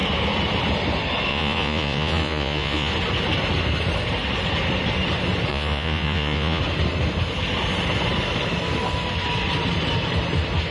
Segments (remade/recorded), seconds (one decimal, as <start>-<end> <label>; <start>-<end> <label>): 0.0-1.3 recorded; 1.3-2.9 remade; 2.9-5.5 recorded; 5.5-6.6 remade; 6.6-10.7 recorded